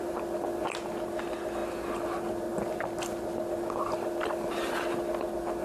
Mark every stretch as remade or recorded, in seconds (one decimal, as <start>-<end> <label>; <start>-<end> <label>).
0.0-5.6 recorded